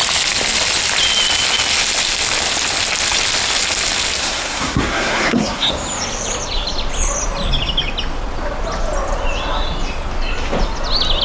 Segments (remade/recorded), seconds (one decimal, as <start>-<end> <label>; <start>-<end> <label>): 0.0-4.2 recorded; 4.2-5.7 remade; 5.7-11.2 recorded